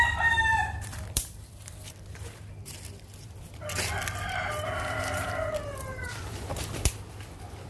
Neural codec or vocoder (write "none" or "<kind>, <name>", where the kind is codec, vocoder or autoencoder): vocoder, BigVGAN v2